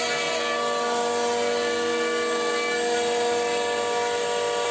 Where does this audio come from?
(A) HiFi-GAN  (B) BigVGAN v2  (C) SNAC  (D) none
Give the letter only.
D